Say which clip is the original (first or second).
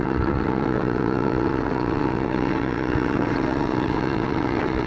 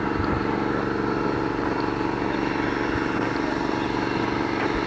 second